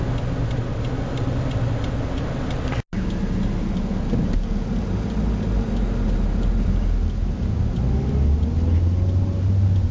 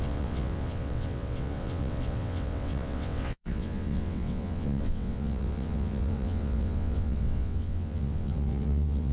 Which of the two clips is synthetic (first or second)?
second